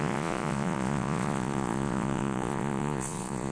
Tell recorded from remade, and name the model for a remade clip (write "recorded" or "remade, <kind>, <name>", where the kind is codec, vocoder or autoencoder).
remade, vocoder, Vocos